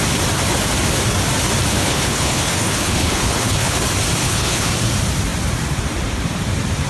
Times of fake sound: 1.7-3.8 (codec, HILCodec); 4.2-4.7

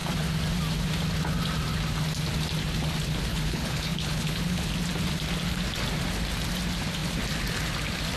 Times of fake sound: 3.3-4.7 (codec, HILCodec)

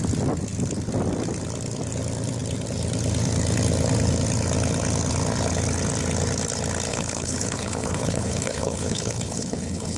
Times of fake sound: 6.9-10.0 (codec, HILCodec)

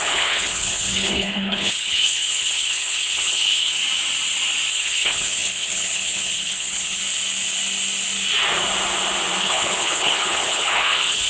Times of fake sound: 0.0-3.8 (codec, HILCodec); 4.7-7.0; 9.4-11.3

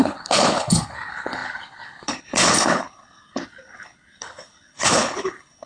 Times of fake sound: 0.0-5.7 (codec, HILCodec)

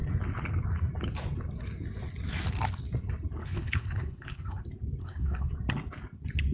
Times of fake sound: 3.4-4.6 (codec, HILCodec); 5.0-5.5